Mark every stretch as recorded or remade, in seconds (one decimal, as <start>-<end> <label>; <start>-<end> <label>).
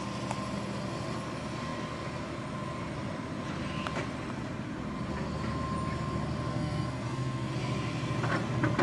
0.0-6.5 recorded; 6.5-7.5 remade; 7.5-8.8 recorded